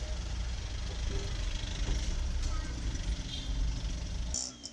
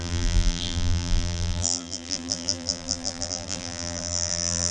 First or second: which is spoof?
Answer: second